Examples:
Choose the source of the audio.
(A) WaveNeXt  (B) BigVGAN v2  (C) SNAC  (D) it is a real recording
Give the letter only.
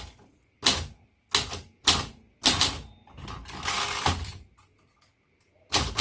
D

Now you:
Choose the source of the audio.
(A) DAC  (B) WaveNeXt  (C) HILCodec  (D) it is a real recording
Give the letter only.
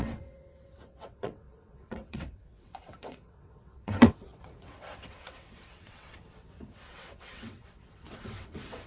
B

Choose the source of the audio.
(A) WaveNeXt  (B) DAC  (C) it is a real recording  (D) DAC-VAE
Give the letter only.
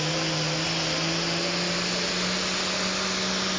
C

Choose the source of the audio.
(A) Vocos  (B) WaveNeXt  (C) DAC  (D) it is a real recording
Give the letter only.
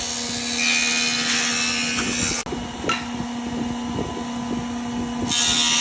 D